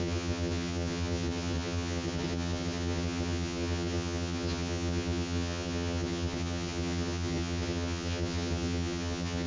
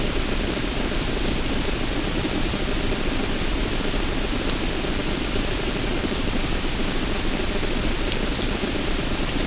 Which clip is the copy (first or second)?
first